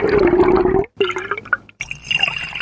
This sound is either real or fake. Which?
fake